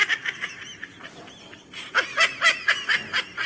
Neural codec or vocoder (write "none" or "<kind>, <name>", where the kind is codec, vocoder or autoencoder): none